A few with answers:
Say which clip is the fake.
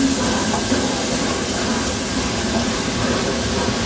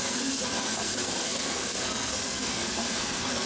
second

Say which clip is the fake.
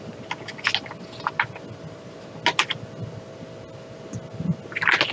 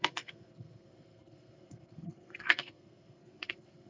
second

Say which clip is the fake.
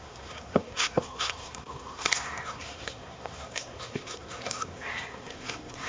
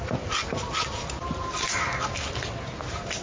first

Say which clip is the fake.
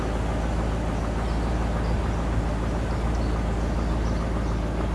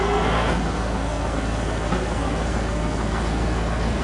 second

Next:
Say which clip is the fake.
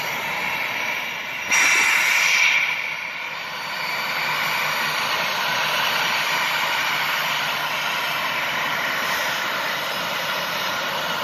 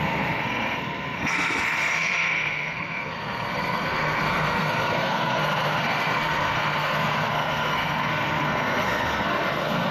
second